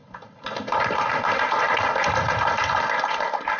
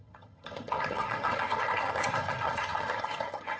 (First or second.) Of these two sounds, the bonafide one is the first